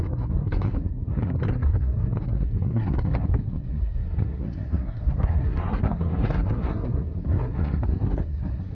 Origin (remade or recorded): remade